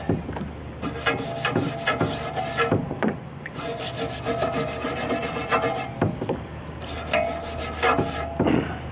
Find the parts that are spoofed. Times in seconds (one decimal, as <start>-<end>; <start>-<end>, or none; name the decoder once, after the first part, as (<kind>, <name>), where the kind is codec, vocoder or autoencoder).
2.8-3.8 (vocoder, Vocos)